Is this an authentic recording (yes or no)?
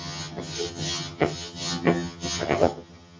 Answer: no